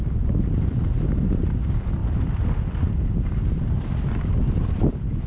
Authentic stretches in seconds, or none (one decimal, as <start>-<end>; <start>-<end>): 0.0-5.3